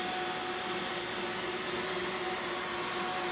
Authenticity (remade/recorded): recorded